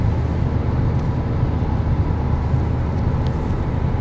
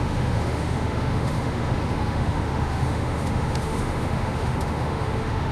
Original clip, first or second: first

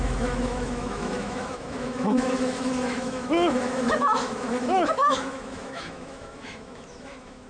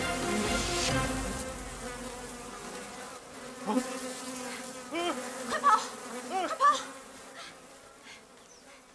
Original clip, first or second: second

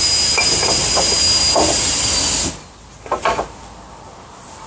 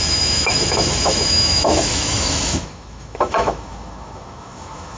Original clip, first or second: first